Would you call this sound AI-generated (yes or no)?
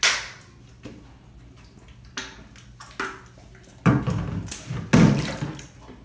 no